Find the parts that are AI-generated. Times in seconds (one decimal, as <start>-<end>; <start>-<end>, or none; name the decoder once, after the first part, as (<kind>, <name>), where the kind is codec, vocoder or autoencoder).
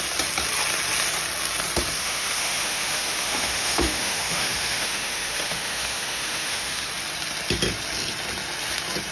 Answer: 2.0-6.9 (autoencoder, DAC-VAE)